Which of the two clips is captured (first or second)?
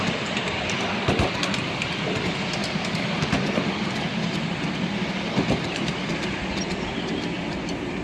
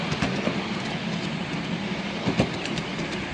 second